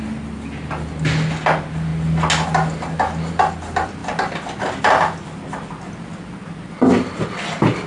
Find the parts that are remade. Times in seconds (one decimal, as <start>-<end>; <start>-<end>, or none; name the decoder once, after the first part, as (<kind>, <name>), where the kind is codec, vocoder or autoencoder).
none

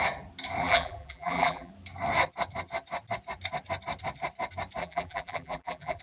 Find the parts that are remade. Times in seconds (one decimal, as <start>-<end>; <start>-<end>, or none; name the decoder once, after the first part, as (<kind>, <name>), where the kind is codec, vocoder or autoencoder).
0.6-1.7 (vocoder, BigVGAN v2); 4.8-6.0

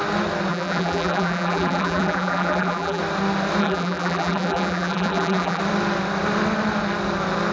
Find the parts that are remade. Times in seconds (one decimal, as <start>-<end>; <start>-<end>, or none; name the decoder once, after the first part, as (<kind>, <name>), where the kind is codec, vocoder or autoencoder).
0.5-3.0 (vocoder, BigVGAN v2); 3.6-5.6

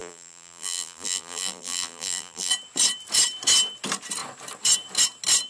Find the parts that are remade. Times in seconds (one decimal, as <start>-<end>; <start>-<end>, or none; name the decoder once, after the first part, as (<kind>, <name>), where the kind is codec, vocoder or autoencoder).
0.0-2.5 (vocoder, BigVGAN v2)

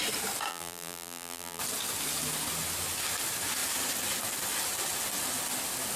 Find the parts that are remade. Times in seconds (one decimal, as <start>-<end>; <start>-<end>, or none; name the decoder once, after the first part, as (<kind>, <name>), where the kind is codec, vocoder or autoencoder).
0.5-1.6 (vocoder, BigVGAN v2)

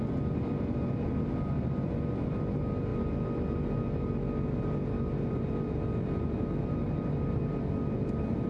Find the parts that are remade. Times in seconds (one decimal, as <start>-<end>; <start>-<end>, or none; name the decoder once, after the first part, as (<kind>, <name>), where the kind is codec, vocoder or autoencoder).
none